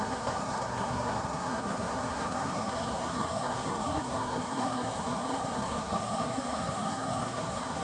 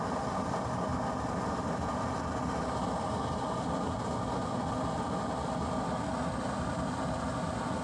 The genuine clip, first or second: second